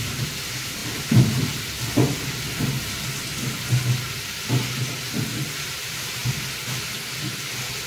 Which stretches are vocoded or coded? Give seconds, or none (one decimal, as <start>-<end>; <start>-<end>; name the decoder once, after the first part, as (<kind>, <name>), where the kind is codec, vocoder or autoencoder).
none